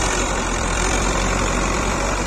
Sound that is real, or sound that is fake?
fake